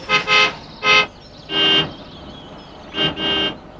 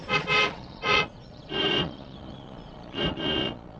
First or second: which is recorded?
first